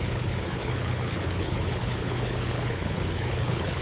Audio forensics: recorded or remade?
remade